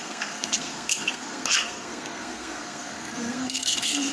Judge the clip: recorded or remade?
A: remade